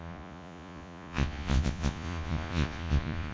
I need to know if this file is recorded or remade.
remade